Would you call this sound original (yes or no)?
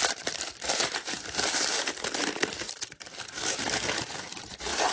no